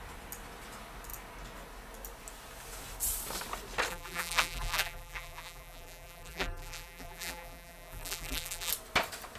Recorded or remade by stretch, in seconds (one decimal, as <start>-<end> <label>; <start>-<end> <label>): 0.0-3.9 recorded; 3.9-8.7 remade; 8.7-9.4 recorded

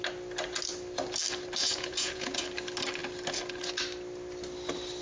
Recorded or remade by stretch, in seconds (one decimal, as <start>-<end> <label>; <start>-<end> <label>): 0.0-1.6 recorded; 1.6-2.4 remade; 2.4-5.0 recorded

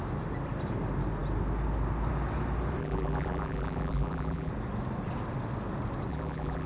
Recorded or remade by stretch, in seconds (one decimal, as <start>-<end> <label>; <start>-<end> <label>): 0.0-2.8 recorded; 2.8-4.5 remade; 4.5-6.1 recorded; 6.1-6.7 remade

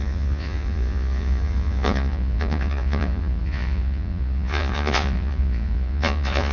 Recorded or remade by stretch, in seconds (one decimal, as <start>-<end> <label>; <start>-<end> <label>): 0.0-6.5 remade

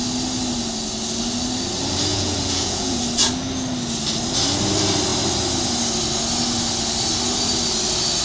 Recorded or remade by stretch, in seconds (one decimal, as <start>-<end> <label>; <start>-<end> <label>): 0.0-2.1 recorded; 2.1-3.0 remade; 3.0-8.2 recorded

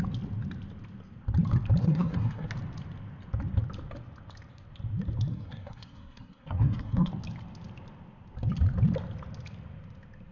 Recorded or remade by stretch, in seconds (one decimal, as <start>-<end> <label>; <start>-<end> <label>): 0.0-1.8 recorded; 1.8-2.5 remade; 2.5-5.3 recorded; 5.3-7.1 remade; 7.1-10.3 recorded